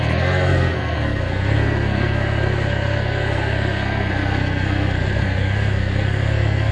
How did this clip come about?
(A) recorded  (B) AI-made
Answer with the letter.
B